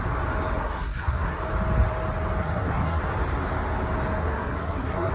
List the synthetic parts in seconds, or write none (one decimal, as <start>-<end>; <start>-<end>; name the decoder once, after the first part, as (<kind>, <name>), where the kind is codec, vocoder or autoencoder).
0.6-1.4 (codec, SNAC); 2.4-3.0; 4.2-5.1